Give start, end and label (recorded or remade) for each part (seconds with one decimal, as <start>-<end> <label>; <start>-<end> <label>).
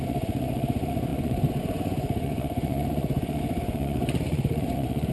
0.0-5.1 remade